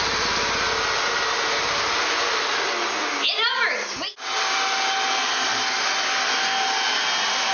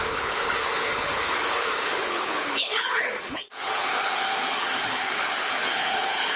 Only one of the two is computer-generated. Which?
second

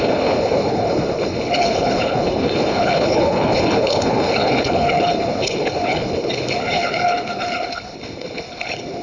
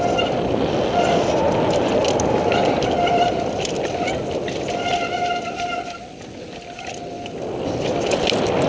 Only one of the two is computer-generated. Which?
first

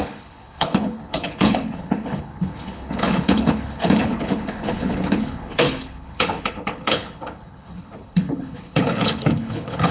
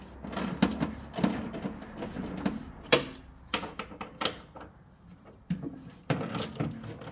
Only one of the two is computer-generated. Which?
first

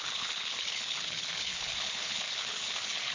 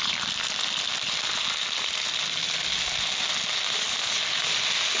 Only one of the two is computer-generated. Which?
first